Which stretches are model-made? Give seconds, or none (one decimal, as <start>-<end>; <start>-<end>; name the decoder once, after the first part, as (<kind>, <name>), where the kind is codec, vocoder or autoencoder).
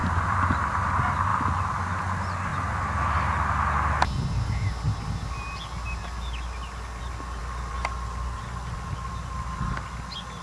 0.0-0.8 (vocoder, BigVGAN v2)